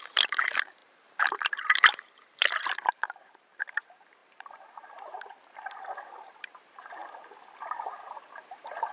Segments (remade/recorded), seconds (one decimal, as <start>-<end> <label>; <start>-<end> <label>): 0.0-7.0 remade; 7.0-7.8 recorded; 7.8-8.9 remade